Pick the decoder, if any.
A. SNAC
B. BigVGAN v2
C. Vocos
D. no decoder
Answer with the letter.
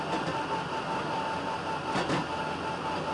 D